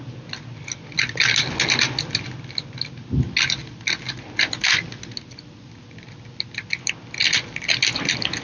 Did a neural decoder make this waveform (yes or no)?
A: no